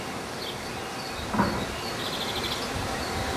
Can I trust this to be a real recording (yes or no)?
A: yes